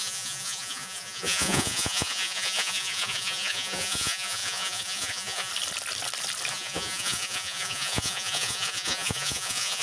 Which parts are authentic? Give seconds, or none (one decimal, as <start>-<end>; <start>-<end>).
5.5-6.5